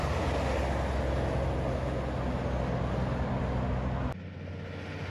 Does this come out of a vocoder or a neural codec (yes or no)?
no